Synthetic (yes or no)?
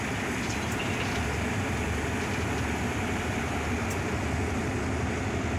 no